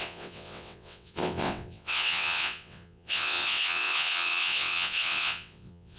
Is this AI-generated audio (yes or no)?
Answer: yes